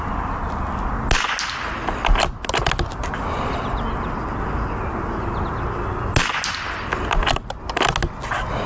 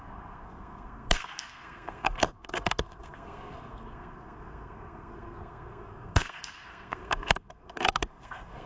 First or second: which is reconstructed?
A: second